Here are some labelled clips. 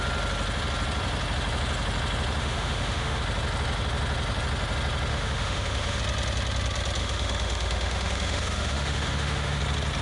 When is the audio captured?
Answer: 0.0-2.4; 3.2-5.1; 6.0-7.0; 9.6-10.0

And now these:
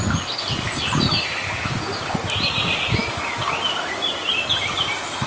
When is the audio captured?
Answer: 0.0-5.3

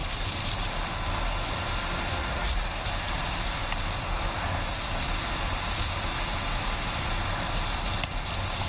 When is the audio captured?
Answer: 0.0-2.2; 2.7-8.7

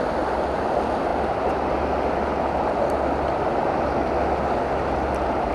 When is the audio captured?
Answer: 0.0-5.5

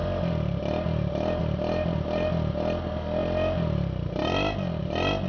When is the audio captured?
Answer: 1.4-5.3